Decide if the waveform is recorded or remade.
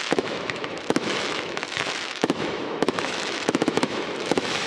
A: remade